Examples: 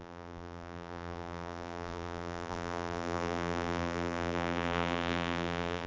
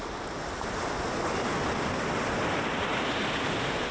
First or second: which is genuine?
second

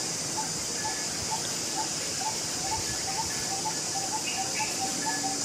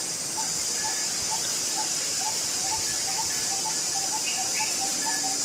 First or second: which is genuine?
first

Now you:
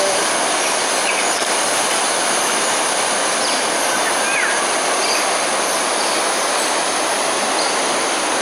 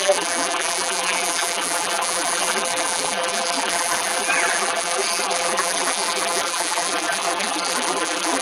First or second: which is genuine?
first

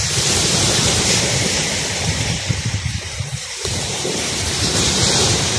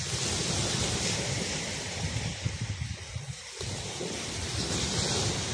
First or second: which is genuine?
second